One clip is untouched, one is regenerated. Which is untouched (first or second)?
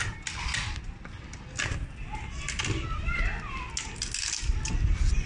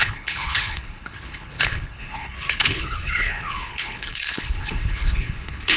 first